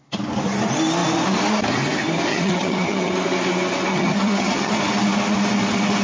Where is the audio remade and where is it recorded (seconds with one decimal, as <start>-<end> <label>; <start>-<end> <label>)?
0.0-2.3 recorded; 2.3-3.1 remade; 3.1-3.9 recorded; 3.9-4.8 remade; 4.8-6.0 recorded